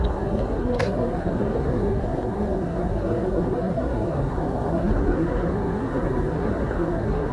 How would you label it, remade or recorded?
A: remade